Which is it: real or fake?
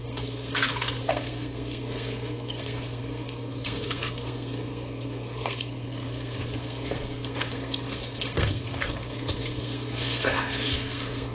fake